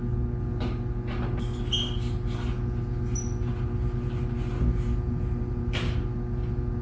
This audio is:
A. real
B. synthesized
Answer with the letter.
A